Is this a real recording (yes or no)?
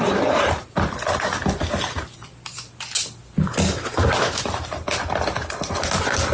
yes